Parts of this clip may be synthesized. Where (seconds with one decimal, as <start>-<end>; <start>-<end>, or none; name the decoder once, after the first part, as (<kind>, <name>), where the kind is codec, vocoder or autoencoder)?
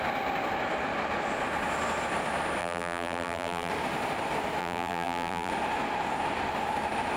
2.6-3.7 (vocoder, BigVGAN v2); 4.6-5.5